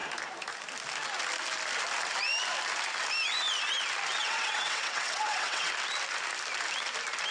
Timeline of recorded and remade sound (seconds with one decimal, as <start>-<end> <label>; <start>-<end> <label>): 0.0-4.2 recorded; 4.2-5.7 remade; 5.7-7.3 recorded